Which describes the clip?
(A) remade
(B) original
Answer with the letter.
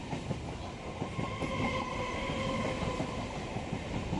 A